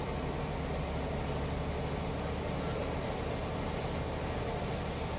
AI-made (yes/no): no